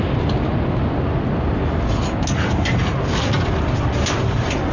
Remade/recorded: recorded